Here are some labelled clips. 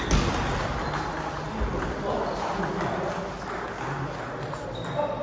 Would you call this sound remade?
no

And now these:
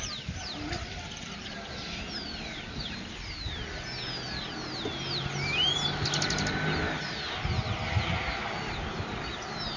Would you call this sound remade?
no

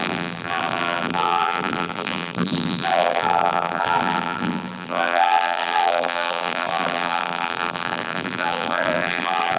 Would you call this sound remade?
yes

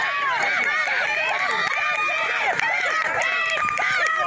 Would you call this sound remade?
yes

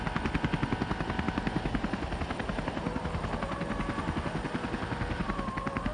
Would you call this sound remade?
no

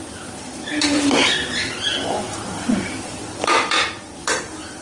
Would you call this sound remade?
yes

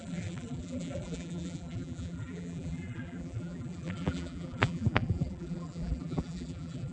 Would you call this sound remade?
yes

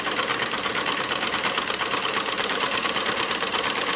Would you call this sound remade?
yes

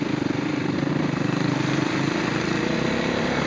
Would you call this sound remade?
yes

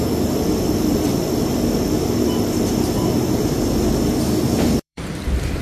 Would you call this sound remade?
yes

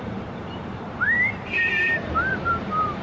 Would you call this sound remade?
yes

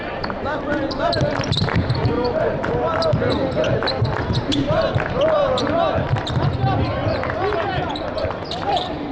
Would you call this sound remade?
yes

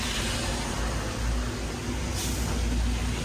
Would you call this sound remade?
no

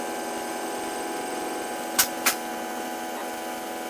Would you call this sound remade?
no